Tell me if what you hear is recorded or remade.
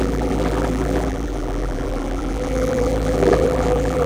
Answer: remade